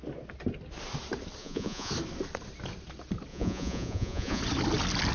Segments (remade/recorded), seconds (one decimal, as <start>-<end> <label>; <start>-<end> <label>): 0.0-1.4 recorded; 1.4-1.9 remade; 1.9-3.3 recorded; 3.3-4.4 remade; 4.4-5.1 recorded